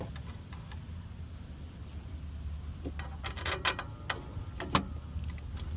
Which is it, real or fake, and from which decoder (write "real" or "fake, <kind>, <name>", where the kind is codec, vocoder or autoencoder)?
real